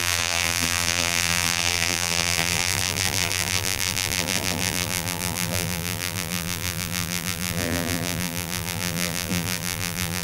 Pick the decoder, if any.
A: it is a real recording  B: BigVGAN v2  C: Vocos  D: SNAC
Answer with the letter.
B